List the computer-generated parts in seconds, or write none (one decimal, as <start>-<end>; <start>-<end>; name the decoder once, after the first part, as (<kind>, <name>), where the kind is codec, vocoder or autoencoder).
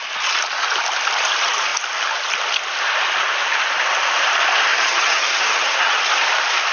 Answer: 4.7-6.0 (vocoder, HiFi-GAN)